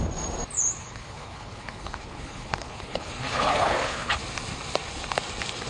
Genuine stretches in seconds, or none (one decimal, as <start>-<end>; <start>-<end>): 0.0-0.8; 4.2-5.7

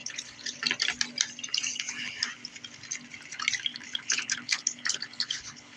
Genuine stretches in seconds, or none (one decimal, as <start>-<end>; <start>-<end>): 0.6-1.7; 2.2-3.7